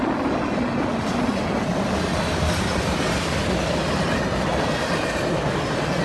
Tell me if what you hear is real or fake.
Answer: real